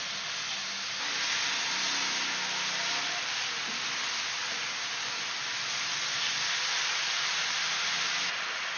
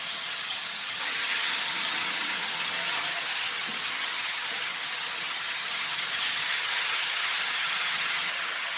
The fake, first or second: second